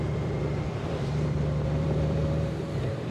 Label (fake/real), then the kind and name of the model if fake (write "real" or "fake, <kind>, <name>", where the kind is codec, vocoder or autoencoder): fake, vocoder, BigVGAN v2